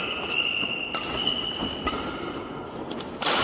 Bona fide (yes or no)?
yes